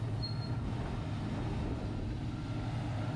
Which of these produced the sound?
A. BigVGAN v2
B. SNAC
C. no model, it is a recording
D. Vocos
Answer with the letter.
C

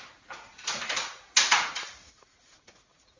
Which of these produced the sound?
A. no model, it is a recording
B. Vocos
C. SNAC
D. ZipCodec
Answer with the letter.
B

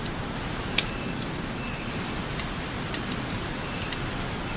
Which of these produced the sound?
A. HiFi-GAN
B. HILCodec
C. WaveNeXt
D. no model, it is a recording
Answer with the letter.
D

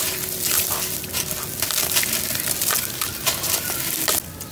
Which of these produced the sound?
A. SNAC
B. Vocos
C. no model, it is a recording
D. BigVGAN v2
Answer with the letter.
C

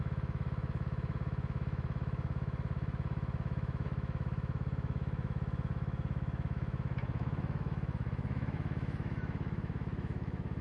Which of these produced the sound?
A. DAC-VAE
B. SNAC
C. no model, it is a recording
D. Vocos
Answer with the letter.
A